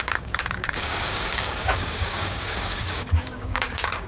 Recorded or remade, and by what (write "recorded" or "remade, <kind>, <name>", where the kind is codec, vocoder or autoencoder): remade, codec, DAC